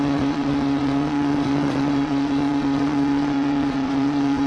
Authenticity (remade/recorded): remade